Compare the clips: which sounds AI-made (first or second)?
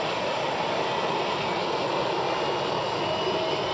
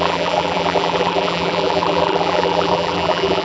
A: second